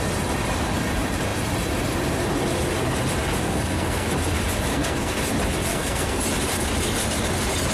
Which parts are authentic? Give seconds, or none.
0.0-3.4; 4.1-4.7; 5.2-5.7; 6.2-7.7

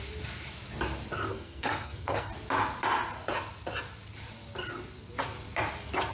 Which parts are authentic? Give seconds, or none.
0.0-1.3; 2.3-6.1

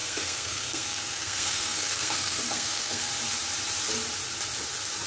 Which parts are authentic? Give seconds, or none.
3.1-5.1

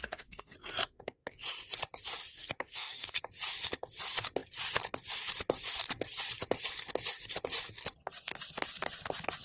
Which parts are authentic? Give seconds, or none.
1.4-2.3; 3.2-9.4

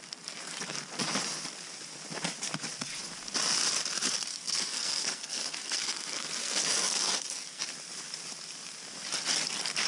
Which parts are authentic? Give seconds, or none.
0.0-4.3; 7.6-9.9

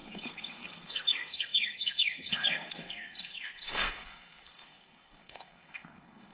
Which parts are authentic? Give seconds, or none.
none

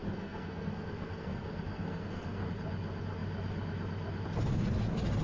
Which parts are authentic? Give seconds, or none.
2.5-5.2

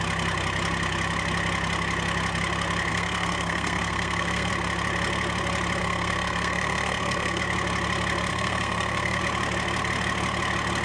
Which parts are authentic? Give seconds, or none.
0.0-2.9; 4.5-5.8; 7.4-8.3; 9.2-10.8